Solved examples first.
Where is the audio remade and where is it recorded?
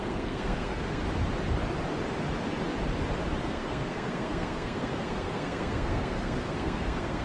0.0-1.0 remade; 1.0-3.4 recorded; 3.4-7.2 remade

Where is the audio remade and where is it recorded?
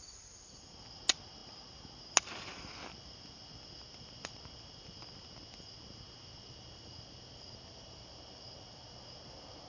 0.0-9.7 recorded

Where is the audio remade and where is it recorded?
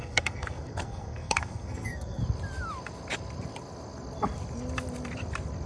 0.0-2.2 remade; 2.2-5.7 recorded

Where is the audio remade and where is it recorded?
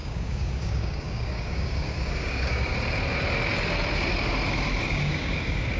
0.0-2.7 remade; 2.7-4.8 recorded; 4.8-5.8 remade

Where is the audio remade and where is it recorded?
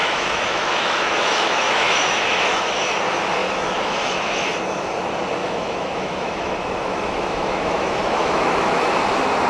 0.0-3.0 remade; 3.0-3.4 recorded; 3.4-4.5 remade; 4.5-5.4 recorded; 5.4-9.0 remade; 9.0-9.5 recorded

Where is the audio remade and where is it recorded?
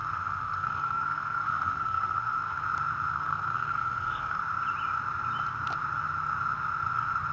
0.0-2.6 remade; 2.6-3.1 recorded; 3.1-4.4 remade; 4.4-7.3 recorded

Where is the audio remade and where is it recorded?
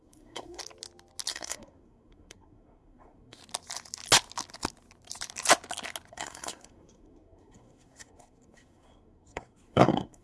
0.0-0.6 remade; 0.6-1.3 recorded; 1.3-3.4 remade; 3.4-6.1 recorded; 6.1-10.2 remade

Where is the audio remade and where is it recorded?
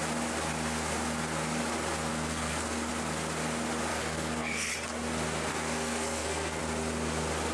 0.0-2.1 recorded; 2.1-2.9 remade; 2.9-3.9 recorded; 3.9-4.7 remade; 4.7-5.5 recorded; 5.5-6.6 remade; 6.6-7.5 recorded